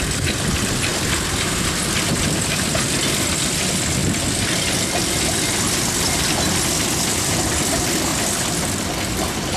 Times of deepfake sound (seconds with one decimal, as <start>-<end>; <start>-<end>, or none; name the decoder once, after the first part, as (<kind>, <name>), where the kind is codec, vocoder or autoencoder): 0.0-4.0 (vocoder, BigVGAN v2); 6.7-8.1; 9.1-9.6